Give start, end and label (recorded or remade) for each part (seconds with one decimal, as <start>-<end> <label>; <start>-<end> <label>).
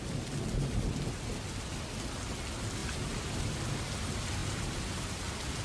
0.0-5.6 recorded